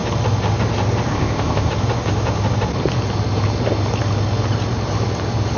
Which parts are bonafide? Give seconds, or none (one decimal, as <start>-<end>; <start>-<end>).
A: 0.0-1.1; 1.7-5.6